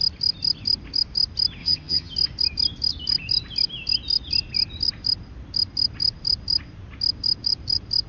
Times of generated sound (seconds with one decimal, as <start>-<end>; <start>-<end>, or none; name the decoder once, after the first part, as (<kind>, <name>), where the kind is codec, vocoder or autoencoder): 1.6-2.1 (vocoder, HiFi-GAN)